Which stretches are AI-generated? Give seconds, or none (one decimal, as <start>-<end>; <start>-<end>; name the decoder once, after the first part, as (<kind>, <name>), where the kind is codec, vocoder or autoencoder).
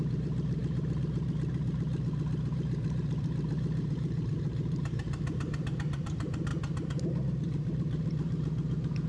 0.0-9.1 (vocoder, BigVGAN v2)